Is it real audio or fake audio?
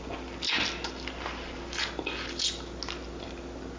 real